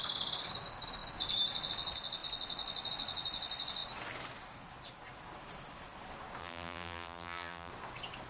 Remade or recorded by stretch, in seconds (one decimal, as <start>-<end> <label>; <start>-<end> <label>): 0.0-6.4 recorded; 6.4-7.7 remade; 7.7-8.3 recorded